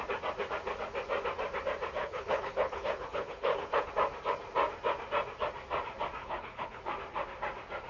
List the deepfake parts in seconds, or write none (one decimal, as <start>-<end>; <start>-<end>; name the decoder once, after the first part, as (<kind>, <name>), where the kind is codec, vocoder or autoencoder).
2.0-3.9 (codec, HILCodec); 6.2-6.8